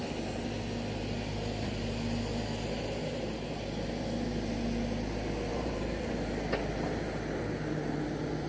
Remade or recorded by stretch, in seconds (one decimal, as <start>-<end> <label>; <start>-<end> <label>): 0.0-5.5 recorded; 5.5-6.1 remade; 6.1-8.5 recorded